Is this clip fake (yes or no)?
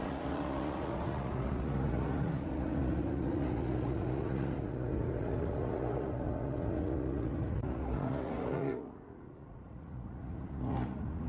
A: yes